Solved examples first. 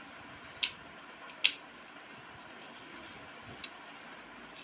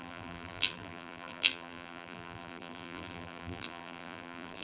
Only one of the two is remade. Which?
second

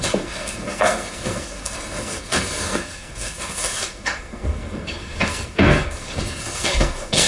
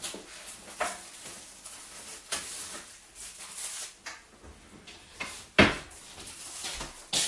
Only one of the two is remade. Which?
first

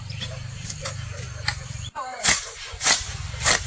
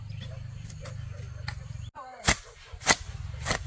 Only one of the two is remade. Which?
first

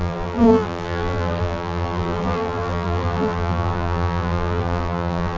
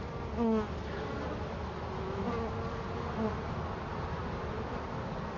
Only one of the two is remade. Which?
first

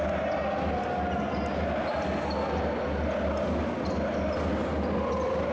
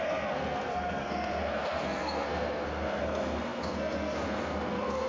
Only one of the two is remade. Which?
second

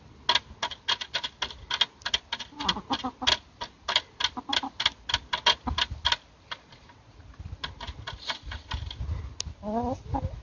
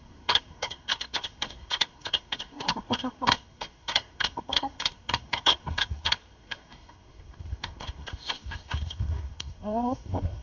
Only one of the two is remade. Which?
second